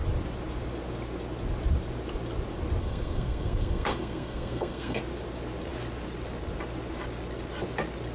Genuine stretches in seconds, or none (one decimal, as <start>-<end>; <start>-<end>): 0.0-2.8; 5.0-8.1